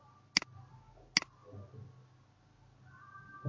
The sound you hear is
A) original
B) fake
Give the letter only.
A